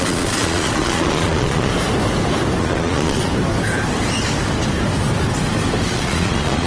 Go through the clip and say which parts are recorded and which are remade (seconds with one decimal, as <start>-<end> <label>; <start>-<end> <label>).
0.0-1.7 remade; 1.7-2.6 recorded; 2.6-3.3 remade; 3.3-5.9 recorded; 5.9-6.7 remade